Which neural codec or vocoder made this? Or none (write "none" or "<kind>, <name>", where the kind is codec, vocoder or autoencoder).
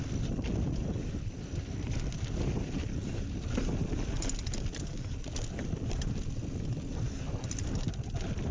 none